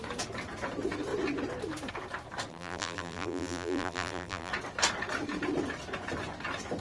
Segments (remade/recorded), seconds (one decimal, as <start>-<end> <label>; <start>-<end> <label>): 0.0-2.5 recorded; 2.5-4.5 remade; 4.5-6.8 recorded